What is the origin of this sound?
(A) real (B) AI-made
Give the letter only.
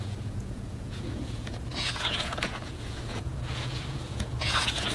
B